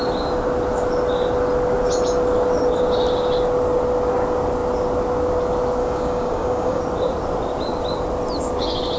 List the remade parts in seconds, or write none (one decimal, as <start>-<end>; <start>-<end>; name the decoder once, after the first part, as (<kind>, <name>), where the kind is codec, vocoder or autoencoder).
5.8-6.8 (codec, DAC)